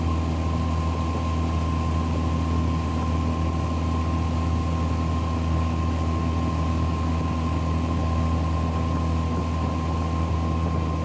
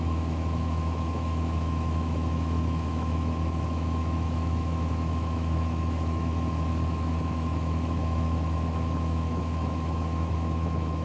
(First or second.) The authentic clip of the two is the first